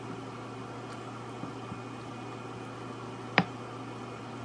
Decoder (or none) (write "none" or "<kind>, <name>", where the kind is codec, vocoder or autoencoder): none